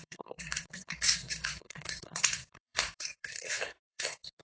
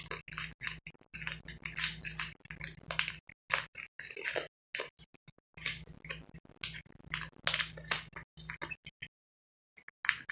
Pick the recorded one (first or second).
second